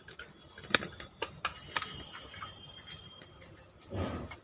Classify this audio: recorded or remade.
recorded